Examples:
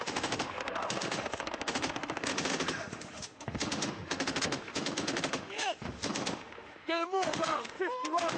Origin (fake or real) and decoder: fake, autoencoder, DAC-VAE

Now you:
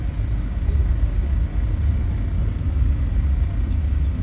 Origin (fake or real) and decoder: real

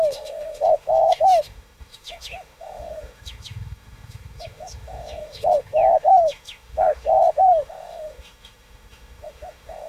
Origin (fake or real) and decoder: fake, autoencoder, DAC-VAE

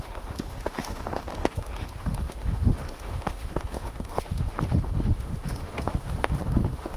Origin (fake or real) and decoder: fake, autoencoder, DAC-VAE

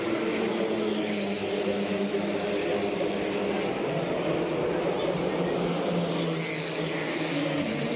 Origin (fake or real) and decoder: real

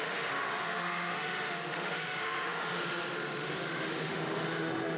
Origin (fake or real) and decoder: fake, autoencoder, DAC-VAE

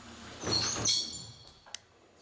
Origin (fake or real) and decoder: real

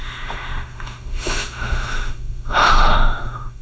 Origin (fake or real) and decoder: fake, autoencoder, DAC-VAE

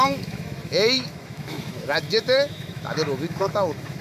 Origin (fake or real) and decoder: fake, autoencoder, DAC-VAE